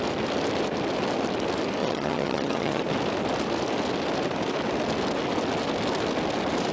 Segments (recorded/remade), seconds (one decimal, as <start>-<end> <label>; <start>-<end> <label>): 0.0-1.8 recorded; 1.8-2.8 remade; 2.8-6.7 recorded